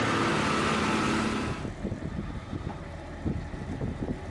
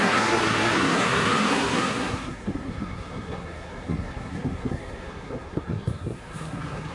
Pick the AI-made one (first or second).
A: second